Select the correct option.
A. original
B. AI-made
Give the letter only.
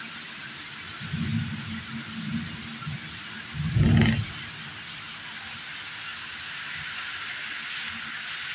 A